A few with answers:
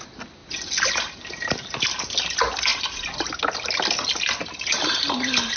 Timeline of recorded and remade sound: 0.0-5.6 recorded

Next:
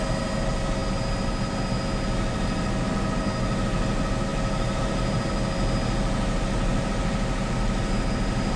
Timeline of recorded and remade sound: 0.0-8.6 recorded

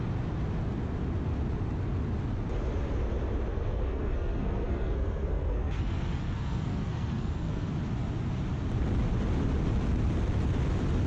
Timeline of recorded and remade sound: 0.0-3.5 recorded; 3.5-7.7 remade; 7.7-11.1 recorded

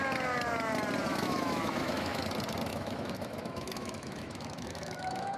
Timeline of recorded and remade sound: 0.0-1.1 recorded; 1.1-2.2 remade; 2.2-2.7 recorded; 2.7-5.4 remade